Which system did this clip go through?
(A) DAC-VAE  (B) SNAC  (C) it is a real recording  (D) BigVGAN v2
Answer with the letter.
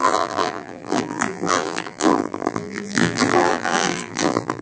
D